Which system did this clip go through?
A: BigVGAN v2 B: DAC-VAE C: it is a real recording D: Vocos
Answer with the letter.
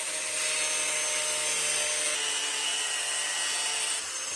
C